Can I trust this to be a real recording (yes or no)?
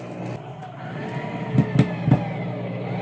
yes